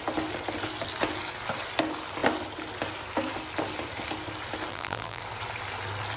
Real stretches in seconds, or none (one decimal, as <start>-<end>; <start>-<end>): 0.0-4.7; 5.2-6.2